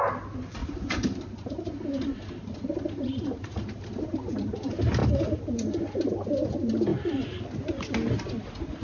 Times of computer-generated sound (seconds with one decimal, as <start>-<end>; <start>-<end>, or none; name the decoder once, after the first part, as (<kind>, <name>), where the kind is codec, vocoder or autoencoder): 0.6-4.5 (vocoder, BigVGAN v2)